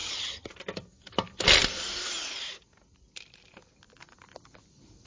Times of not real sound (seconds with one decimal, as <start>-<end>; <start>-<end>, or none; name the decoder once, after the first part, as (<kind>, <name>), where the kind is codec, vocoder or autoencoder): 0.0-0.5 (vocoder, HiFi-GAN)